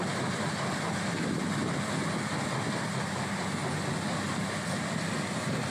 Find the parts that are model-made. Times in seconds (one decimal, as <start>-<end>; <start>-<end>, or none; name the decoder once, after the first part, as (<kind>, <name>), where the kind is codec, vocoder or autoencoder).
0.9-1.6 (vocoder, BigVGAN v2); 4.8-5.7